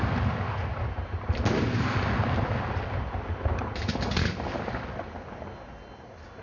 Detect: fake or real real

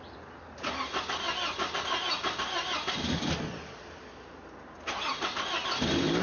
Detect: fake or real real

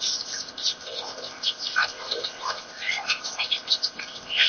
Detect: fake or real fake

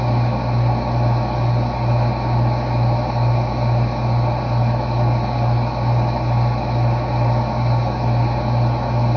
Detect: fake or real real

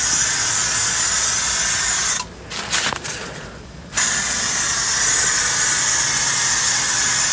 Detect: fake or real real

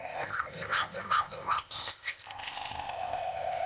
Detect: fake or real fake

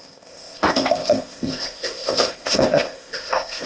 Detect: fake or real fake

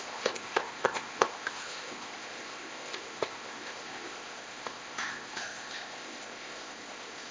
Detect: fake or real fake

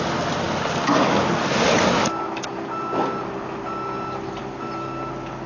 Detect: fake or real real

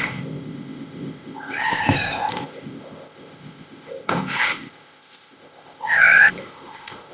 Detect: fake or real fake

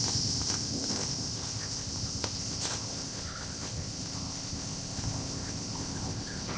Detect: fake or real fake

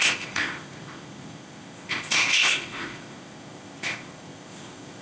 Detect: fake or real fake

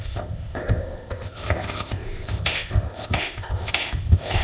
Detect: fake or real fake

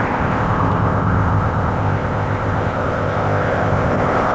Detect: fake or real fake